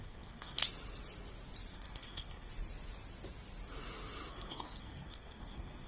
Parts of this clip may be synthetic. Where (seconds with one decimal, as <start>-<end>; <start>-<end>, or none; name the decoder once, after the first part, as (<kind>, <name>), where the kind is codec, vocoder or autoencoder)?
0.0-0.6 (codec, SNAC); 1.7-2.5; 4.3-5.9